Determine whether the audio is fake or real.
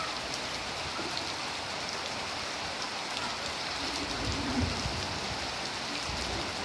real